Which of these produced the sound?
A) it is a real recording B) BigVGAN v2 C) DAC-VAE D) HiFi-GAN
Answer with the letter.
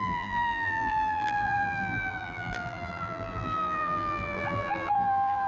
B